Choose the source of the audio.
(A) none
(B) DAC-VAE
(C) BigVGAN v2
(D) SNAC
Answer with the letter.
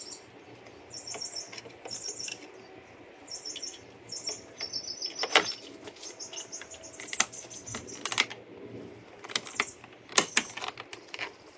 A